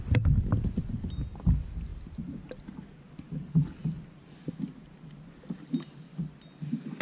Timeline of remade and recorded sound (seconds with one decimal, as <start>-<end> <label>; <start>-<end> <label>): 0.0-7.0 recorded